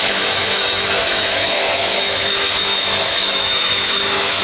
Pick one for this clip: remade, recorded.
remade